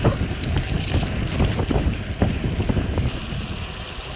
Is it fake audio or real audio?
real